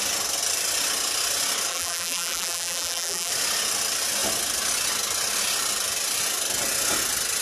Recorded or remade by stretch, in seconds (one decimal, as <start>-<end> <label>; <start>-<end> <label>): 0.0-1.7 recorded; 1.7-3.3 remade; 3.3-7.4 recorded